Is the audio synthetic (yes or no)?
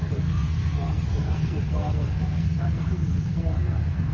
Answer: yes